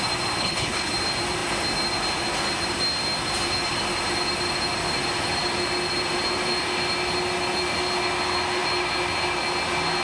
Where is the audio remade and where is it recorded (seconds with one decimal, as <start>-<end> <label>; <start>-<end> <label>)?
0.0-0.4 recorded; 0.4-0.9 remade; 0.9-10.0 recorded